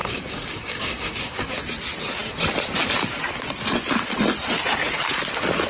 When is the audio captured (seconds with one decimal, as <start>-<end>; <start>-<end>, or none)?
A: 1.6-5.7